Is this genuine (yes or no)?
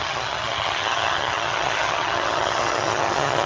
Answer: no